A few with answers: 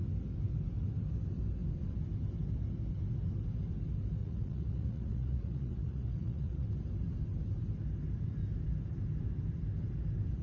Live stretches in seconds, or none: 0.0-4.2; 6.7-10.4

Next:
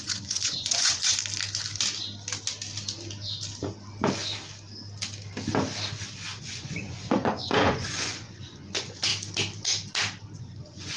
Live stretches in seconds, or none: 1.2-6.4; 9.1-10.4

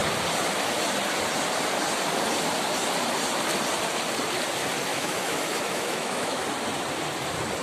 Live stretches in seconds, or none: 0.0-4.9; 6.4-7.6

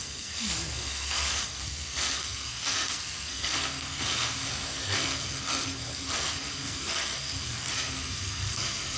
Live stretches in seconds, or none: none

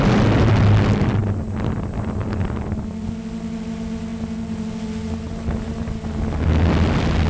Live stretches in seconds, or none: 0.0-7.3

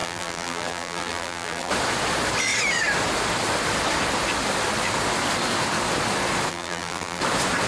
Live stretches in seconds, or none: 1.7-6.5; 7.2-7.7